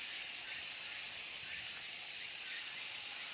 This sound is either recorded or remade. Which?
recorded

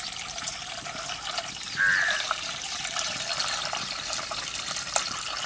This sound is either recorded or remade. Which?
recorded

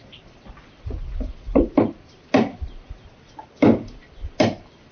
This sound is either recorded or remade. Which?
recorded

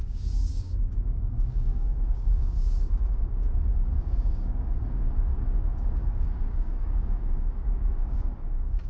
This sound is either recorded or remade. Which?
remade